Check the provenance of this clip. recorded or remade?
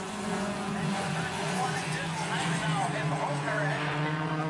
remade